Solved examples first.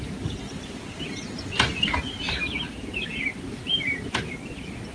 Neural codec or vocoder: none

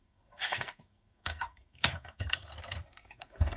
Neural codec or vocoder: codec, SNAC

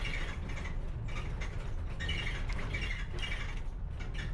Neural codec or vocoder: none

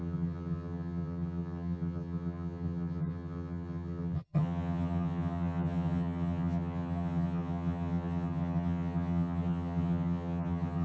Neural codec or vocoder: vocoder, HiFi-GAN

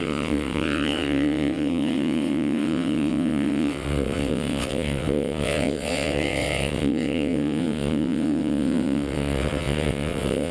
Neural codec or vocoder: vocoder, WaveNeXt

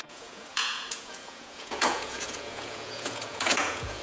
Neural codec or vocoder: vocoder, Vocos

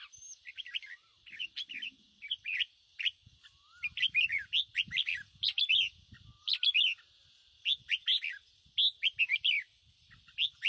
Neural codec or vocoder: none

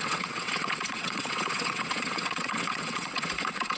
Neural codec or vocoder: vocoder, WaveNeXt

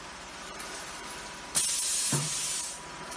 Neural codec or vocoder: vocoder, BigVGAN v2